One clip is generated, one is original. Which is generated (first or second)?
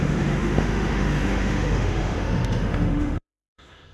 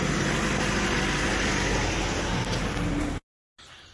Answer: first